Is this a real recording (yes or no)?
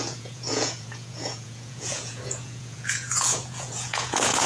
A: no